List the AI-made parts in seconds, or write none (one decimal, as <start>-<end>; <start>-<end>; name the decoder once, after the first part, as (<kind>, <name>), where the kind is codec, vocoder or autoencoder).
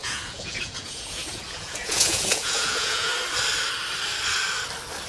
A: 0.0-3.1 (vocoder, Vocos)